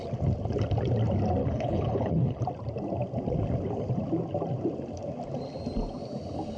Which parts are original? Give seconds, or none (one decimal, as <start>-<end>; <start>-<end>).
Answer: 0.0-1.4; 2.4-6.6

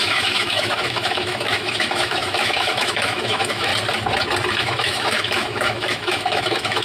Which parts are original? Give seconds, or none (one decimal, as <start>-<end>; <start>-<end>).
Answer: 3.7-4.6

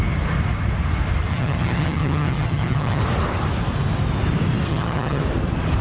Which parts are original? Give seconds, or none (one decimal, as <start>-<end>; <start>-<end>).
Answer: 0.0-1.3; 3.0-4.7; 5.2-5.8